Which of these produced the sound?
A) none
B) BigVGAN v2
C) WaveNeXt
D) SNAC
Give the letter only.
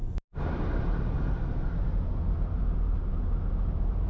A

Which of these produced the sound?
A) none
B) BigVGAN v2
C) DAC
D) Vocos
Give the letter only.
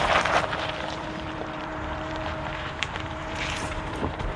B